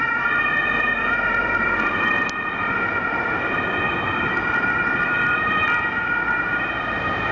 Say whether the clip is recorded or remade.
recorded